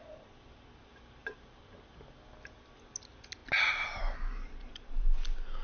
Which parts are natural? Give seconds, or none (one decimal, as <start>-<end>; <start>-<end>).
0.0-5.6